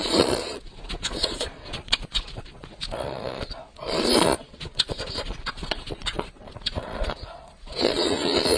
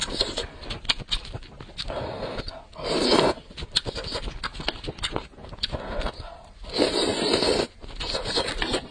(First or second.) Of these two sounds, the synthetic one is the first